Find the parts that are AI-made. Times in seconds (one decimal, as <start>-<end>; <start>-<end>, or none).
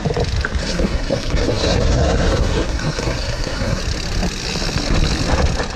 0.6-3.8